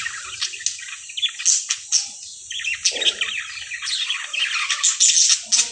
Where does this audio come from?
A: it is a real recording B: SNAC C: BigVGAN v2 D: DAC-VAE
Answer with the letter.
A